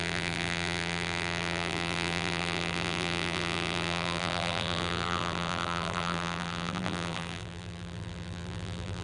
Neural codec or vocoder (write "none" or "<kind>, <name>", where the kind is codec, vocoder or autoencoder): vocoder, BigVGAN v2